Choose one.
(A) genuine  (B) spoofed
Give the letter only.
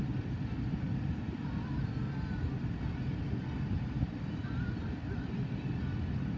A